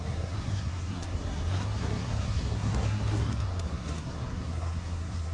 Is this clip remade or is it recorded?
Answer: remade